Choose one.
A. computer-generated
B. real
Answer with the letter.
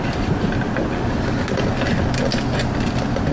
B